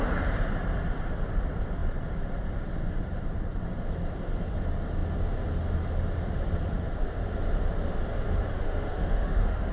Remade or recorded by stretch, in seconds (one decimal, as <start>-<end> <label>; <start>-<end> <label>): 0.0-8.5 recorded; 8.5-9.7 remade